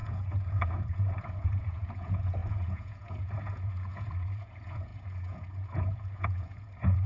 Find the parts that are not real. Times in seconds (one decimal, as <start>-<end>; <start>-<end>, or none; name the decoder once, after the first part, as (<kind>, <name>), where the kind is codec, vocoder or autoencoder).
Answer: 0.0-7.1 (vocoder, Vocos)